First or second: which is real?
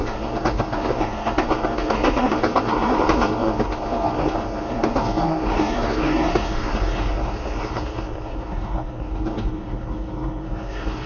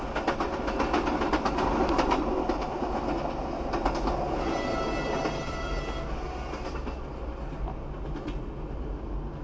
second